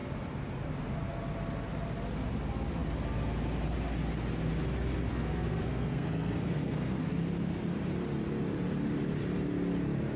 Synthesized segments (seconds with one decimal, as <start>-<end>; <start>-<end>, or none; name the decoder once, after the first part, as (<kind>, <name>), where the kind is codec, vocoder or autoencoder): 5.1-7.1 (codec, SNAC)